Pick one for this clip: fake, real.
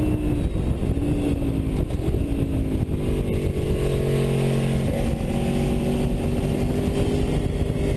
real